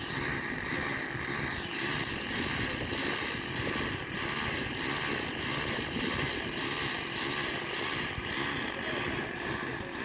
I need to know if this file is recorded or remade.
recorded